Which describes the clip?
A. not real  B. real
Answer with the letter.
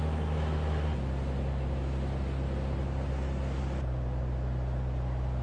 B